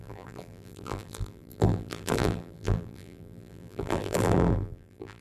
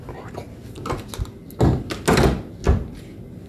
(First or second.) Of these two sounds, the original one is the second